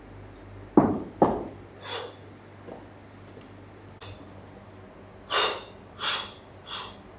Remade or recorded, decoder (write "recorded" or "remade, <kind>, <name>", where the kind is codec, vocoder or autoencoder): recorded